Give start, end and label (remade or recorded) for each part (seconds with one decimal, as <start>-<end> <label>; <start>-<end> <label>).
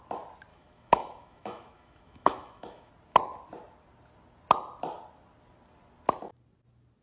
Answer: 0.0-0.5 recorded; 0.5-2.9 remade; 2.9-7.0 recorded